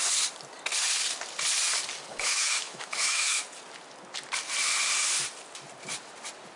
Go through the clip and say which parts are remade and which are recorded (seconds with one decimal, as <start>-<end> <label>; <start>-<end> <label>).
0.0-2.1 recorded; 2.1-3.4 remade; 3.4-6.6 recorded